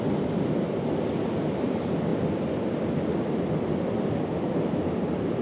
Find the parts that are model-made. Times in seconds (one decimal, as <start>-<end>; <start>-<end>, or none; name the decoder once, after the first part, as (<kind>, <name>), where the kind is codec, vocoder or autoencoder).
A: none